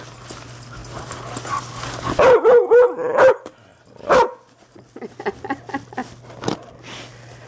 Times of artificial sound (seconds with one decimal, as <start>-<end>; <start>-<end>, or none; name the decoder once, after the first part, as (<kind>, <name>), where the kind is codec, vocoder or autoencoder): none